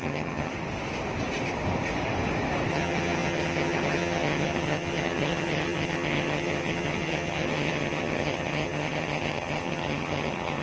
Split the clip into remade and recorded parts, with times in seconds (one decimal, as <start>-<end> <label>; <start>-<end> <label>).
0.0-0.5 remade; 0.5-2.7 recorded; 2.7-10.6 remade